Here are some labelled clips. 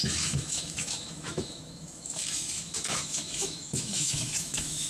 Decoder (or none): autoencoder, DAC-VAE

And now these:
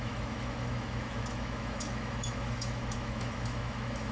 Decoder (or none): autoencoder, DAC-VAE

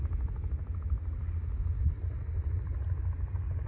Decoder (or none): none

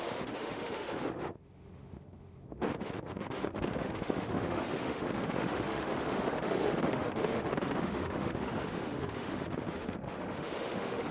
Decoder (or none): autoencoder, DAC-VAE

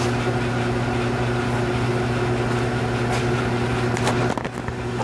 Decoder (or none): none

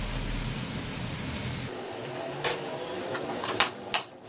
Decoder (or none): none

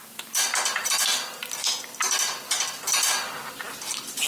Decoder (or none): none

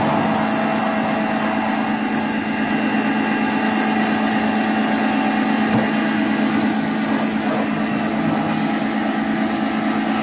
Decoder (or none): none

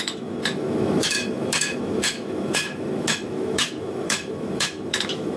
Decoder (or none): autoencoder, DAC-VAE